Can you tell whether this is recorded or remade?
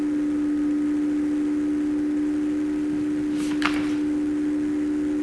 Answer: recorded